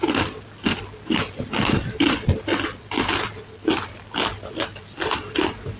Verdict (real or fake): real